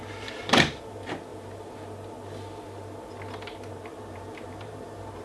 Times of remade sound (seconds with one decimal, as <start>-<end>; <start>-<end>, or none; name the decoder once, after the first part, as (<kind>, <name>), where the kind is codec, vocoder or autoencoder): 0.0-1.3 (vocoder, BigVGAN v2); 3.7-5.2